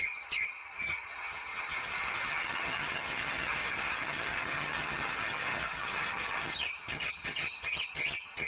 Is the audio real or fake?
fake